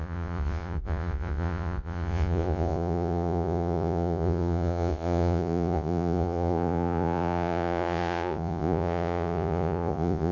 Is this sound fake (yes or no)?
yes